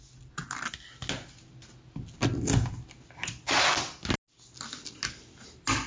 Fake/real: real